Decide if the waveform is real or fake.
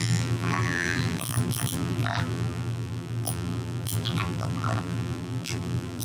fake